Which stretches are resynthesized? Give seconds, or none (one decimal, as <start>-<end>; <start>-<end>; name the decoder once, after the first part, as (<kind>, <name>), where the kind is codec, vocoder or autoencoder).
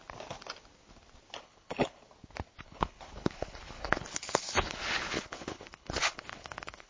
1.4-2.0 (codec, HILCodec); 2.6-6.9